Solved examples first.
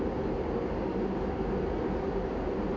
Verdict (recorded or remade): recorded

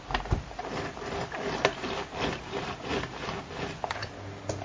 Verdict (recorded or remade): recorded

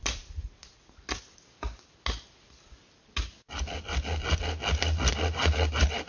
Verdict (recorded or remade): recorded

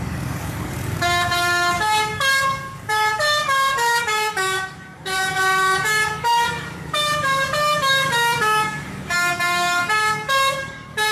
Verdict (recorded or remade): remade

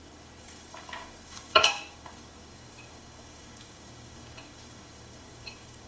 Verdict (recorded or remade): remade